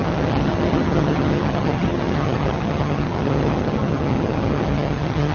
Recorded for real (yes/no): no